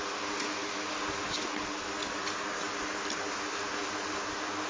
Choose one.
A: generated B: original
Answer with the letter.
B